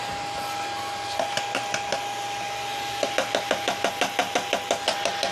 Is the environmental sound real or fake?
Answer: real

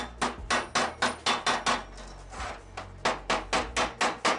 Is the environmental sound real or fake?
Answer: real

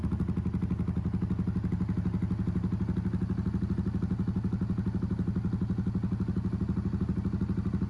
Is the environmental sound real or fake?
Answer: real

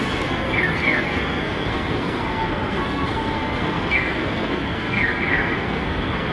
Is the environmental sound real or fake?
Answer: fake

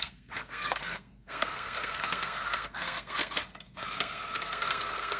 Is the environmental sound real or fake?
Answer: fake